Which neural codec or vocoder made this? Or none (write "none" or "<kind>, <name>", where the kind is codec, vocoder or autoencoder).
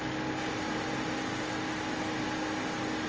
none